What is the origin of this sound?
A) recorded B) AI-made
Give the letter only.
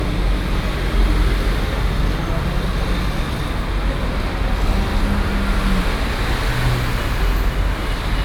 A